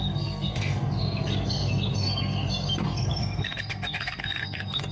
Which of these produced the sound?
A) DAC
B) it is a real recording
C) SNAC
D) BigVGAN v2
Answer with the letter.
C